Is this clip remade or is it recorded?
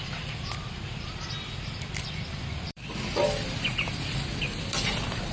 remade